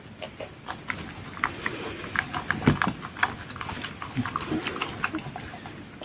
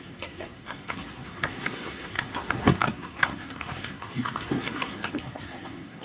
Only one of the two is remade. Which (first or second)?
second